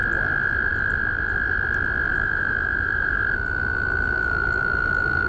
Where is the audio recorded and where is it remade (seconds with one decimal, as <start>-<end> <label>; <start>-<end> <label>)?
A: 0.0-2.1 recorded; 2.1-3.2 remade; 3.2-3.7 recorded; 3.7-5.3 remade